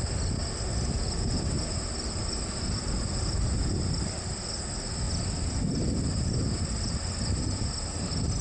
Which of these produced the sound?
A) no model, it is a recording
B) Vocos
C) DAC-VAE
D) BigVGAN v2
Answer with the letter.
A